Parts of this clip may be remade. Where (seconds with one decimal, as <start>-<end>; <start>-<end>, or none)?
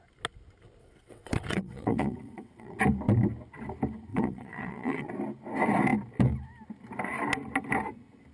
0.8-2.8; 4.1-5.1